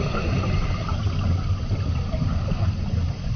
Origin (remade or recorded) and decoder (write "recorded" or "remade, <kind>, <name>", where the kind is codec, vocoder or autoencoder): recorded